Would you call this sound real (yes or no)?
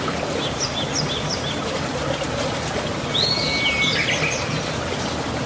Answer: yes